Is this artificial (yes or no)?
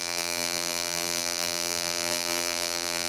yes